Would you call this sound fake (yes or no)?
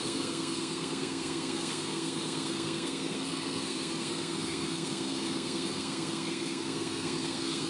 yes